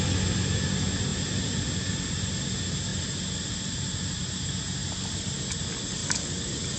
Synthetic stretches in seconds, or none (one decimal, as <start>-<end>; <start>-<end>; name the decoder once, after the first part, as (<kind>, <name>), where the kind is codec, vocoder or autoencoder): none